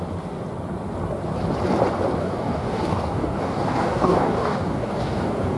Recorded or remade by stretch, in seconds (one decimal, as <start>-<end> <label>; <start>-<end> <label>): 0.0-2.2 recorded; 2.2-5.6 remade